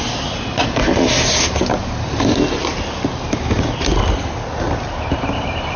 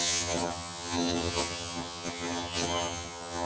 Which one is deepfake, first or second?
second